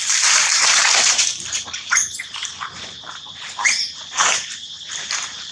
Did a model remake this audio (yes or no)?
yes